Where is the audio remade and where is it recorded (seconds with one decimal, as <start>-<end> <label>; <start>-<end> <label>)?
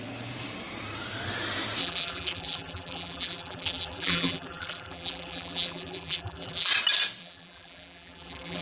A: 0.0-1.8 recorded; 1.8-6.7 remade; 6.7-7.2 recorded; 7.2-8.6 remade